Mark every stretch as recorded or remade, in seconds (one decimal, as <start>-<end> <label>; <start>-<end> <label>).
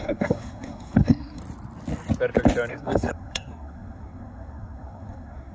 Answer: 0.0-1.4 remade; 1.4-2.7 recorded; 2.7-5.5 remade